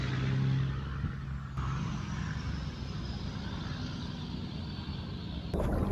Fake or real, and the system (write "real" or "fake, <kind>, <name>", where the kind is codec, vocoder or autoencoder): real